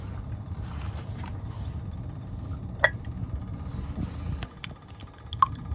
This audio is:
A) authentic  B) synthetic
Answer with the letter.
A